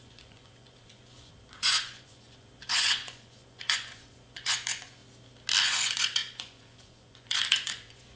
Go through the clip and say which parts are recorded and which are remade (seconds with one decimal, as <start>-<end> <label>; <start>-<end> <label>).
0.0-5.0 remade; 5.0-5.6 recorded; 5.6-8.2 remade